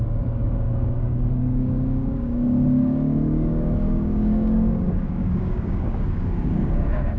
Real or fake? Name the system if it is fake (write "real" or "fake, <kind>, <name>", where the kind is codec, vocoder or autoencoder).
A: fake, codec, DAC